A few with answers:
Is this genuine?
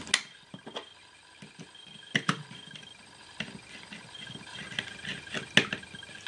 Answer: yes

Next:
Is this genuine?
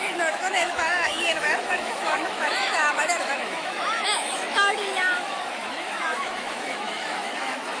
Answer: no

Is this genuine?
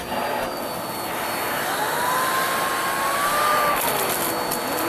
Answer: yes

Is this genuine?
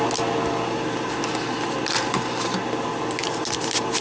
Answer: yes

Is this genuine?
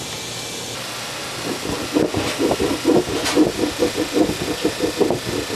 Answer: yes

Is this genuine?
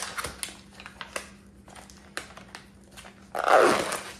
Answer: yes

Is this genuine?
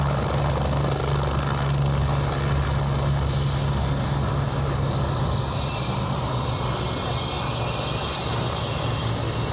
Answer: yes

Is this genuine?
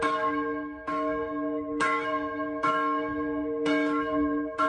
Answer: no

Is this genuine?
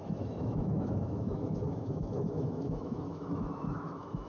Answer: no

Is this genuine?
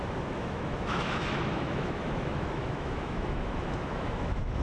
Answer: no